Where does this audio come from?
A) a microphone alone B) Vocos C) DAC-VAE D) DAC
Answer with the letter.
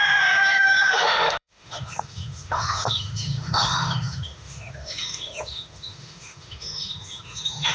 C